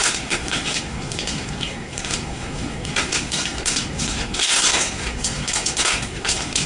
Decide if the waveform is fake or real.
fake